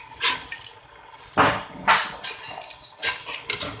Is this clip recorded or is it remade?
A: recorded